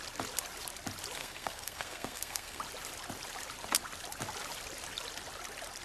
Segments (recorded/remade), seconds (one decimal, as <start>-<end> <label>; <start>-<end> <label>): 0.0-1.2 recorded; 1.2-2.6 remade; 2.6-5.8 recorded